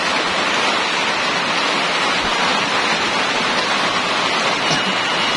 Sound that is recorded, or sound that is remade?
recorded